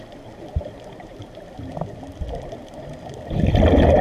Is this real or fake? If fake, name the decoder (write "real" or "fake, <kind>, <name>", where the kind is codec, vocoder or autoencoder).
real